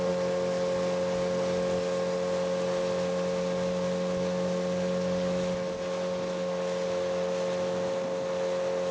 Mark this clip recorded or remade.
recorded